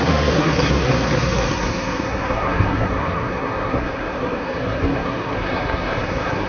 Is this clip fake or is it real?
fake